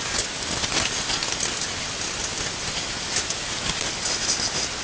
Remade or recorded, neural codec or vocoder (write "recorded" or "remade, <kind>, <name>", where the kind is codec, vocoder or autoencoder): recorded